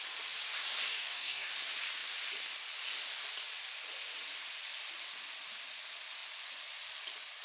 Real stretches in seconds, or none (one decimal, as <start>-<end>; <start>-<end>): 0.0-0.9; 1.5-7.4